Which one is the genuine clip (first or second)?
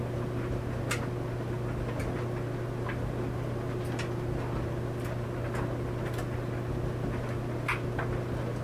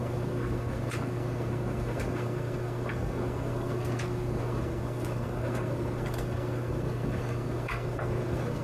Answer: first